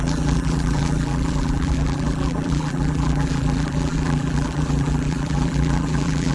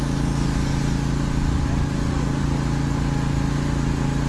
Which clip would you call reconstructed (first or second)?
first